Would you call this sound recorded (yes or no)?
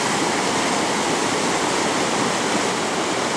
yes